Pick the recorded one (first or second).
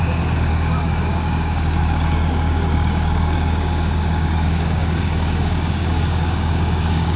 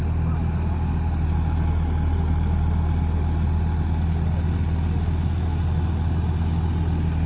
second